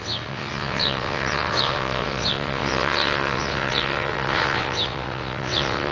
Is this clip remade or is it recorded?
remade